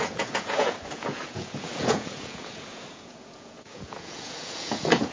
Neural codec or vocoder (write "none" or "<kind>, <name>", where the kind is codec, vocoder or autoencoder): vocoder, Vocos